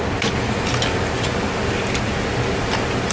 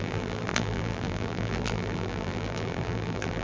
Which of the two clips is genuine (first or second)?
first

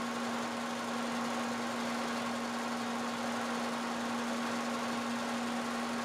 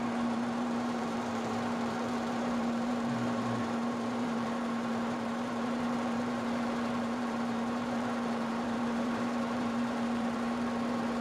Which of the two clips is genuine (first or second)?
first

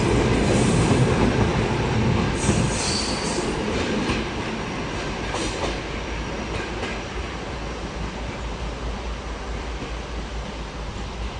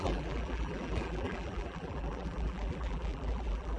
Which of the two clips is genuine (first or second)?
first